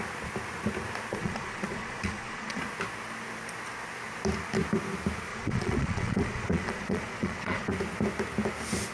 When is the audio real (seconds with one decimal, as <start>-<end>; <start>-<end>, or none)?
0.0-1.1; 2.6-5.3; 7.7-8.9